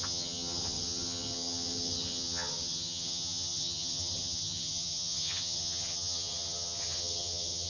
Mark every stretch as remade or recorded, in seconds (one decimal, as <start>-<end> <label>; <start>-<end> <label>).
0.0-7.7 remade